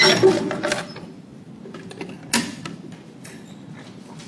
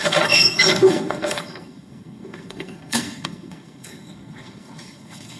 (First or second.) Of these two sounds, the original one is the first